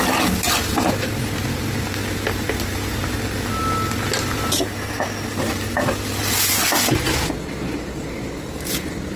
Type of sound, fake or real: real